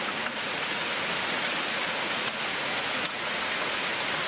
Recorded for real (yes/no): no